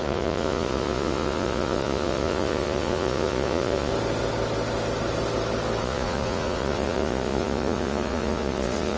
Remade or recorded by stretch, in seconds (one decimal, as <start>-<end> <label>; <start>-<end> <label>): 0.0-3.9 remade; 3.9-5.8 recorded; 5.8-9.0 remade